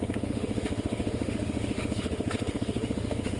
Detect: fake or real fake